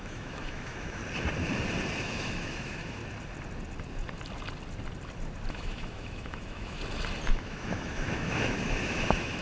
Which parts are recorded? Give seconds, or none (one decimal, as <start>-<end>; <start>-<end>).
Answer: 1.0-2.1; 3.0-5.5; 6.8-7.3